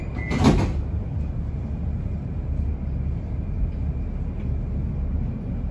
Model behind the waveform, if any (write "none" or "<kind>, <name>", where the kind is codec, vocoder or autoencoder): none